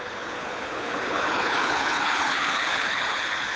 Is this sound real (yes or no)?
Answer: no